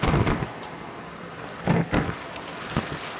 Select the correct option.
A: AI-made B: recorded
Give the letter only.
B